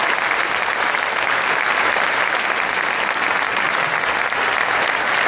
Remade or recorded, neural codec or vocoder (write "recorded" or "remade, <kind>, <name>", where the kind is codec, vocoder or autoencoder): recorded